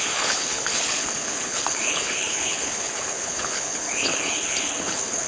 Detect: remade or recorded remade